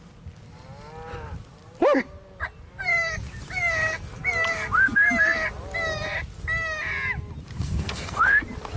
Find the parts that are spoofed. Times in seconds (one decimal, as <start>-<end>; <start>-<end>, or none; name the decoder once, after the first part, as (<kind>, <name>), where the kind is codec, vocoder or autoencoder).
7.6-8.2 (codec, SNAC)